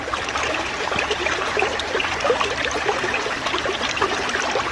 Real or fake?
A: fake